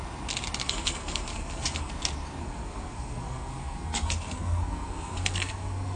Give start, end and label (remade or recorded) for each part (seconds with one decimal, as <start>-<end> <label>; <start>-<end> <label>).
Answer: 0.0-0.6 recorded; 0.6-1.9 remade; 1.9-2.4 recorded; 2.4-6.0 remade

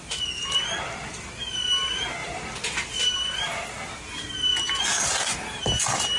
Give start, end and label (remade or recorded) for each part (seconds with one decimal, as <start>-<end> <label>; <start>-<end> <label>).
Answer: 0.0-6.2 recorded

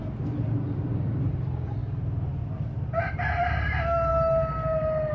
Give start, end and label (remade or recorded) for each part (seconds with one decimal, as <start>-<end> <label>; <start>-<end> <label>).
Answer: 0.0-1.8 remade; 1.8-3.1 recorded; 3.1-4.1 remade; 4.1-5.1 recorded

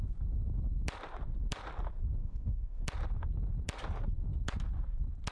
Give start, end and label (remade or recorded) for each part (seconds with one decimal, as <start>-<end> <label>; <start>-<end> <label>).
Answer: 0.0-2.2 recorded; 2.2-2.8 remade; 2.8-5.3 recorded

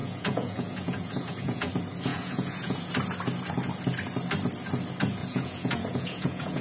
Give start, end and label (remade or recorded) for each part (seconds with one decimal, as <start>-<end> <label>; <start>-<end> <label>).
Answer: 0.0-1.7 remade; 1.7-2.1 recorded; 2.1-2.9 remade; 2.9-5.2 recorded; 5.2-6.6 remade

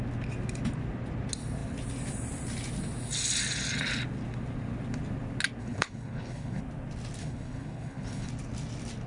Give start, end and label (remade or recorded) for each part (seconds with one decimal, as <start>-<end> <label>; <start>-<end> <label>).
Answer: 0.0-5.6 recorded; 5.6-6.6 remade; 6.6-7.2 recorded; 7.2-8.3 remade; 8.3-9.1 recorded

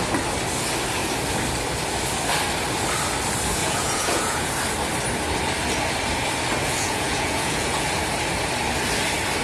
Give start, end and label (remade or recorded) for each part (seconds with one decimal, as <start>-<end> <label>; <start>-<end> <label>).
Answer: 0.0-3.6 recorded; 3.6-4.5 remade; 4.5-6.6 recorded; 6.6-8.0 remade; 8.0-9.4 recorded